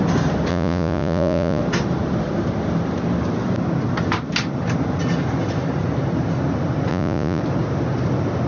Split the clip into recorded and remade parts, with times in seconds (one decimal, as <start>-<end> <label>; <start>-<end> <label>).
0.0-0.5 recorded; 0.5-1.6 remade; 1.6-6.9 recorded; 6.9-7.4 remade; 7.4-8.5 recorded